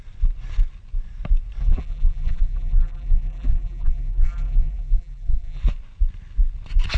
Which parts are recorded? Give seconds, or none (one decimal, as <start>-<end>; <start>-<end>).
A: 0.0-1.6; 5.6-7.0